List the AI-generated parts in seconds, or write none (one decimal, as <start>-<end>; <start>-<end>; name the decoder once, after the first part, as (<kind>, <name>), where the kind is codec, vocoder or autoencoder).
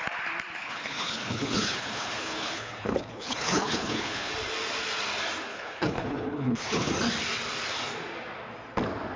0.6-4.3 (codec, HILCodec); 5.5-6.9